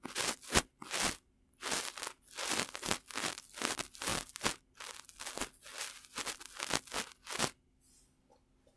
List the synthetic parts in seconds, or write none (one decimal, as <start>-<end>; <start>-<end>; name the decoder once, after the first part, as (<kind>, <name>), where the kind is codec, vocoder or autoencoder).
none